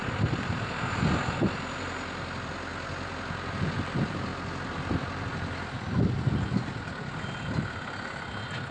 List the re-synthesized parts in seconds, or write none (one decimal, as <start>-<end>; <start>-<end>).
none